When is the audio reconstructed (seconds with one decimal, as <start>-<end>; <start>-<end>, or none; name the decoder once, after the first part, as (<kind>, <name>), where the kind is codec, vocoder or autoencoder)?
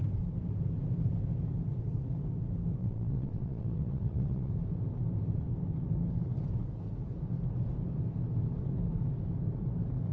2.8-4.5 (vocoder, WaveNeXt)